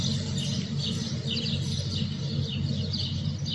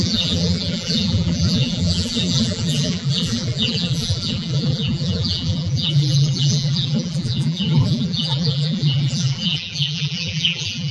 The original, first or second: first